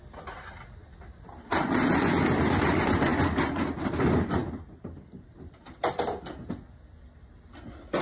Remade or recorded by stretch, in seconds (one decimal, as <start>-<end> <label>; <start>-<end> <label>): 0.0-8.0 recorded